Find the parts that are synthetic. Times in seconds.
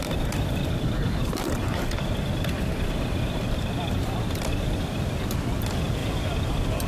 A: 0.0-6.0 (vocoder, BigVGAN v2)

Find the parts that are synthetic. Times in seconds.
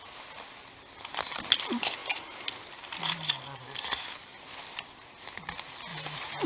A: 2.0-2.5 (vocoder, BigVGAN v2); 4.3-5.1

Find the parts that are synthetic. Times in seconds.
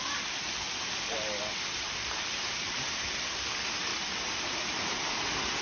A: 2.0-3.0 (vocoder, BigVGAN v2); 3.9-4.6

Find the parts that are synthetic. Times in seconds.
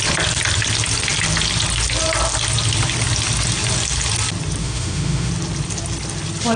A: 4.6-5.3 (autoencoder, DAC-VAE)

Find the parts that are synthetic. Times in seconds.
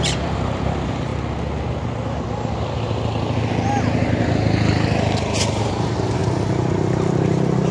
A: 0.0-1.1 (vocoder, BigVGAN v2); 5.6-6.2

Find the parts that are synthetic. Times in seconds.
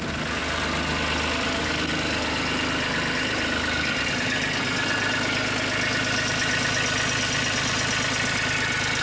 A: none